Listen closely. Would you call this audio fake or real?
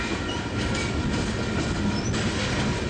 real